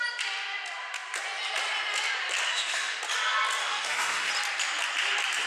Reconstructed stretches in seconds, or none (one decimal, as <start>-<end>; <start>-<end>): 2.5-3.0; 3.6-4.3